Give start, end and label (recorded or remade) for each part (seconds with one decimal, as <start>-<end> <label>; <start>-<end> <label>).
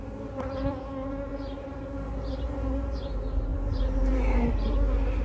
0.0-1.3 recorded; 1.3-1.8 remade; 1.8-3.5 recorded; 3.5-4.5 remade; 4.5-5.2 recorded